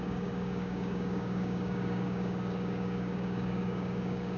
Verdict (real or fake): fake